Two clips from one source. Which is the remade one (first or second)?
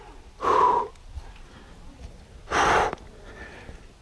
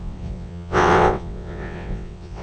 second